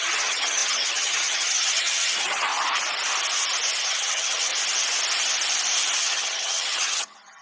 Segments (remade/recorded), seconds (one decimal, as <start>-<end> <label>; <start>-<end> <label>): 0.0-2.5 remade; 2.5-3.8 recorded; 3.8-4.5 remade; 4.5-6.0 recorded; 6.0-7.4 remade